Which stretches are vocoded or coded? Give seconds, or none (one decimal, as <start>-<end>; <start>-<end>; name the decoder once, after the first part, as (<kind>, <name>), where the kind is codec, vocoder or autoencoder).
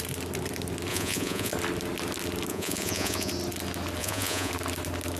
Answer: 0.9-1.5 (vocoder, Vocos); 2.5-3.3; 4.0-4.5